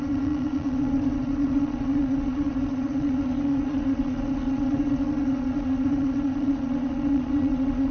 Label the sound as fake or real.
fake